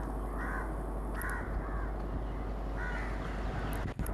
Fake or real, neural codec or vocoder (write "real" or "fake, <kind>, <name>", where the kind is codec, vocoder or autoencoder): real